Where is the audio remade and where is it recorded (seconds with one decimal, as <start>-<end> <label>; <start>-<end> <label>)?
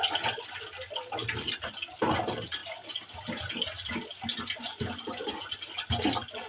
0.0-6.5 recorded